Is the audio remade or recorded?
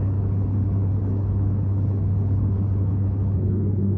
remade